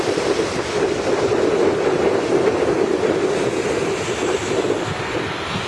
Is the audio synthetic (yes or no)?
no